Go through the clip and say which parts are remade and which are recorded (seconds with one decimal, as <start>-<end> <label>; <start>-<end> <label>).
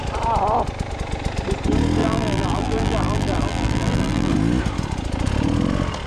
0.0-2.0 recorded; 2.0-4.3 remade; 4.3-6.1 recorded